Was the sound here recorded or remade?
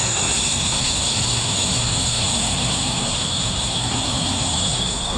remade